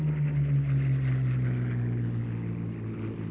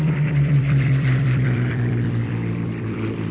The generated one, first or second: second